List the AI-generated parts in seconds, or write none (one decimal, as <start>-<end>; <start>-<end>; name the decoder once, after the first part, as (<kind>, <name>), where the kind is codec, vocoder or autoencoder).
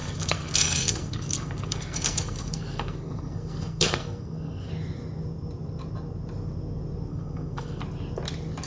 0.0-4.7 (codec, SNAC); 7.1-7.8